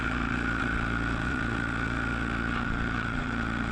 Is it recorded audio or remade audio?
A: remade